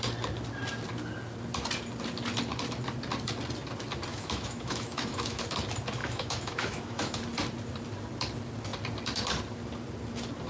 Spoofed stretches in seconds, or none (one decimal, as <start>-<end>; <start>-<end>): 4.1-5.4; 6.0-7.2